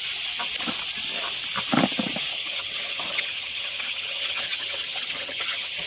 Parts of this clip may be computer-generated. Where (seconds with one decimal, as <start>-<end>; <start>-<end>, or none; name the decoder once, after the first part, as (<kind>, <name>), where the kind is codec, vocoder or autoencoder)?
2.3-5.9 (vocoder, HiFi-GAN)